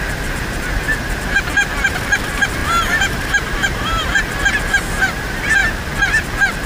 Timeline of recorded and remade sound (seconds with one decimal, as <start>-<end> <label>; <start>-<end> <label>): 0.0-2.6 recorded; 2.6-4.1 remade; 4.1-6.7 recorded